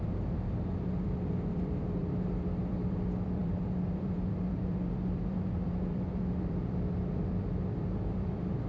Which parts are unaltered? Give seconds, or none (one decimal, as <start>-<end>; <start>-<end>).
none